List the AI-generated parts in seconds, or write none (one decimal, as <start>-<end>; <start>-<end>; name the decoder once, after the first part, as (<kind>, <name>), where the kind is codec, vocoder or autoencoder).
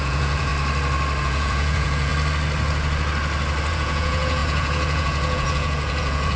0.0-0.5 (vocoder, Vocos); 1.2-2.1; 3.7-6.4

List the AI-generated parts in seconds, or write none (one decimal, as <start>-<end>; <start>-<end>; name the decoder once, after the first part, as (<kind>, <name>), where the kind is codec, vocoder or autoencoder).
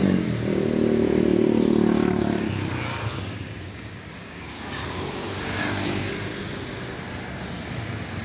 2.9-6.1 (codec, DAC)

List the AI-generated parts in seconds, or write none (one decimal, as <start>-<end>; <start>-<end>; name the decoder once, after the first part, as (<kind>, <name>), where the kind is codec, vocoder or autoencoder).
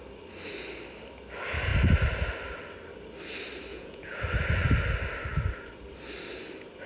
3.7-4.2 (vocoder, Vocos)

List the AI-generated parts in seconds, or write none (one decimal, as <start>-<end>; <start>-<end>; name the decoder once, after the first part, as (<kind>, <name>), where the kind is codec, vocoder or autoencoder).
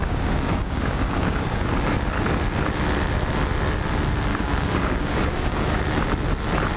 0.0-1.7 (codec, DAC); 4.3-5.8